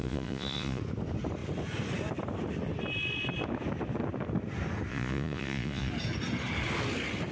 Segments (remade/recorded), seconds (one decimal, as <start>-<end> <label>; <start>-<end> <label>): 0.0-0.8 remade; 0.8-4.9 recorded; 4.9-5.9 remade; 5.9-7.3 recorded